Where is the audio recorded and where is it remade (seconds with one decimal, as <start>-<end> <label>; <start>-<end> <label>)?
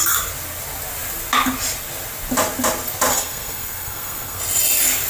0.0-3.1 recorded; 3.1-4.4 remade; 4.4-5.1 recorded